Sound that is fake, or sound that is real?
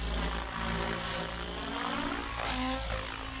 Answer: real